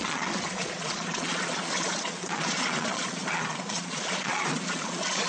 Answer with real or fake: fake